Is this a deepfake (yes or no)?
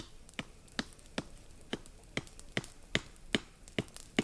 no